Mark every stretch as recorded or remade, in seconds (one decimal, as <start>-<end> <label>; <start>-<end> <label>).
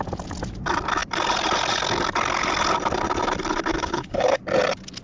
0.0-3.7 recorded; 3.7-4.4 remade; 4.4-5.0 recorded